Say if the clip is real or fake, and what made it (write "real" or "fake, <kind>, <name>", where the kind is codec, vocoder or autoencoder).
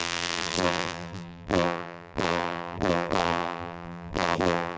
fake, vocoder, BigVGAN v2